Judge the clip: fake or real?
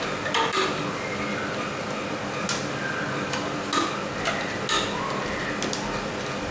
real